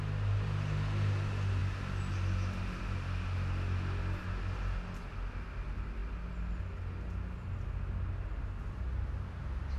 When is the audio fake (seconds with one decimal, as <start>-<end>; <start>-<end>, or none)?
none